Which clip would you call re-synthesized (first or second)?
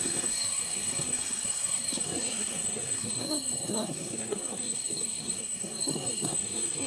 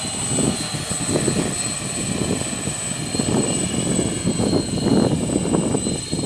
first